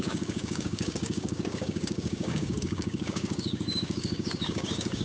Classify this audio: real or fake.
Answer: fake